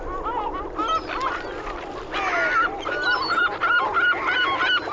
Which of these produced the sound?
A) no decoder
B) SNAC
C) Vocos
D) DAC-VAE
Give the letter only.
A